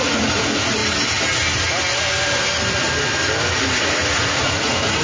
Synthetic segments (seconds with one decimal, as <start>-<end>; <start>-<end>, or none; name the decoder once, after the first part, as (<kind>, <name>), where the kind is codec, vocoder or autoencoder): 0.0-0.8 (vocoder, Vocos); 3.8-5.0